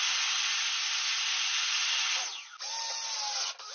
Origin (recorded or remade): recorded